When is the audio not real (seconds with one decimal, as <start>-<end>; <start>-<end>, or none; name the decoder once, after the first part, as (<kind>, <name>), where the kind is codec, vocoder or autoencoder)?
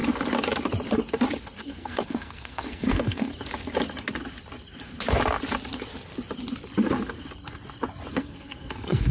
1.6-3.3 (codec, SNAC); 8.1-9.1